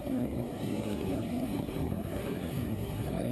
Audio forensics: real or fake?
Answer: fake